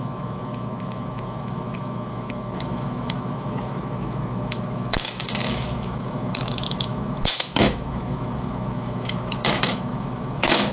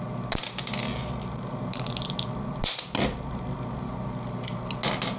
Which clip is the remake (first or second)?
first